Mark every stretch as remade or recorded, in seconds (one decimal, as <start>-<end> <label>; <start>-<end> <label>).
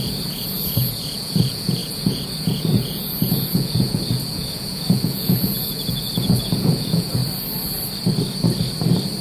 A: 0.0-7.2 remade; 7.2-9.2 recorded